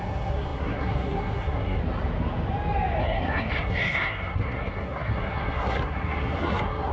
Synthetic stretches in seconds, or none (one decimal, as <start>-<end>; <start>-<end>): 0.0-1.8; 3.0-6.9